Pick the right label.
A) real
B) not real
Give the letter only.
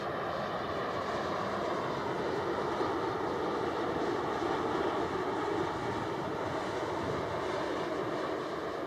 A